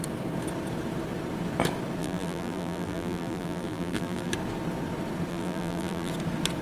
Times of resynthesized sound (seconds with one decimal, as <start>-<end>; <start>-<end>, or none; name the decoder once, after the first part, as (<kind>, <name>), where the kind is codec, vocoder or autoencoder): 2.0-4.3 (vocoder, BigVGAN v2); 5.3-6.1